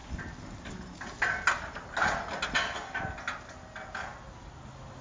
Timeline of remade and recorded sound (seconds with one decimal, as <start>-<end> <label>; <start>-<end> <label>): 0.0-5.0 recorded